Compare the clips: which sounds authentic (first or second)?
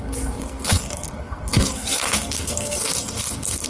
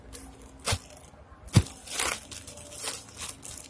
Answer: second